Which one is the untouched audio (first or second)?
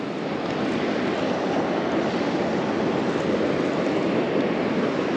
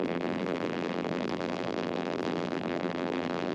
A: first